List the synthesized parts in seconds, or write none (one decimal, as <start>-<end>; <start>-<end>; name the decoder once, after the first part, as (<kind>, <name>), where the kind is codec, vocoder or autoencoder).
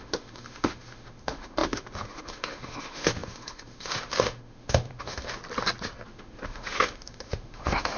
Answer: 0.0-5.4 (autoencoder, DAC-VAE); 6.1-8.0